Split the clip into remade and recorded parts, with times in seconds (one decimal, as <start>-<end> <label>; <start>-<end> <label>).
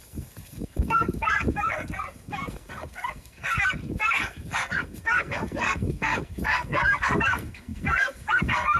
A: 0.0-8.8 remade